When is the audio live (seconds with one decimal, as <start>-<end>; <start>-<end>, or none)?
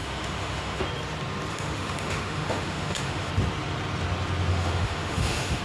0.8-1.5; 3.3-4.5